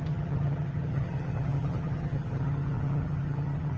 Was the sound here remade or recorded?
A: remade